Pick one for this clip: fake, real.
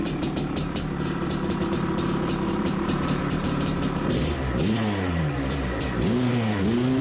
fake